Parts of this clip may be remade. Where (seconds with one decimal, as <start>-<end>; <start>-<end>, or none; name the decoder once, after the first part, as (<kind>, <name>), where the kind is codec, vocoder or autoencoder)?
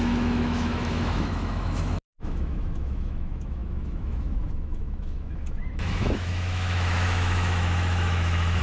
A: 0.0-8.6 (autoencoder, DAC-VAE)